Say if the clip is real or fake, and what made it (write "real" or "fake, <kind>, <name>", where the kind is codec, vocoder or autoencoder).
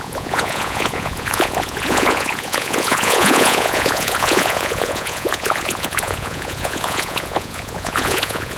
fake, vocoder, Vocos